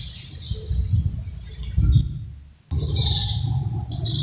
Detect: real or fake real